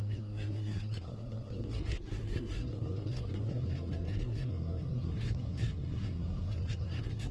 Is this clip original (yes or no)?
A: no